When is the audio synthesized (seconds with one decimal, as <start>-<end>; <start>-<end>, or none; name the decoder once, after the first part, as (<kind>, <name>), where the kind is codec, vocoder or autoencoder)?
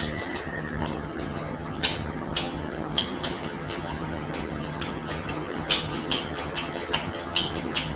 0.0-8.0 (vocoder, HiFi-GAN)